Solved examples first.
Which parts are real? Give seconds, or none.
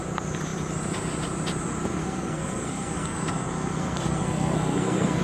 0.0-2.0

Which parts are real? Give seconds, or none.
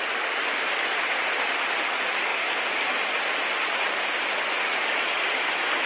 0.0-5.9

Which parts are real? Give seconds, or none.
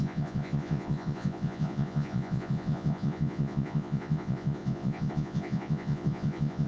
none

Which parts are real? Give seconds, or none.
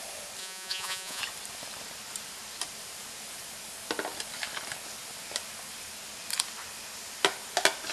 0.0-0.4; 1.2-7.9